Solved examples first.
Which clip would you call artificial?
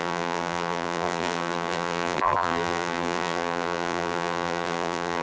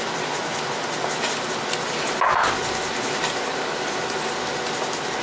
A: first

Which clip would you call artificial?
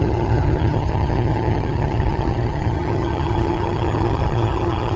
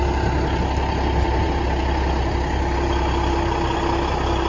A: first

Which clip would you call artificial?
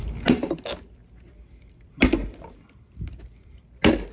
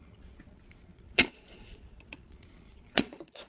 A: second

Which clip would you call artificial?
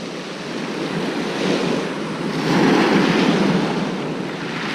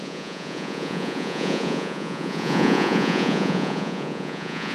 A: second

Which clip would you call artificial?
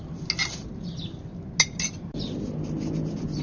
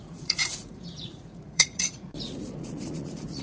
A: second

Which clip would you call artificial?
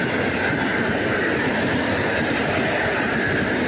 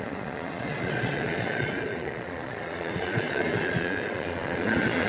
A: second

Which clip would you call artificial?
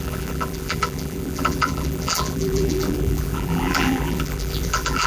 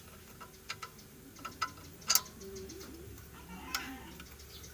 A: first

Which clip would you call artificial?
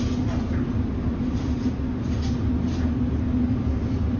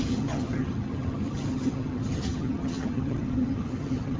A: second